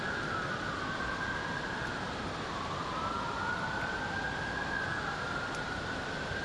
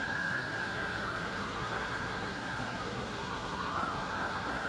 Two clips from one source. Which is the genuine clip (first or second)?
first